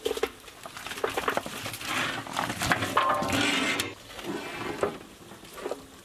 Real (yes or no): yes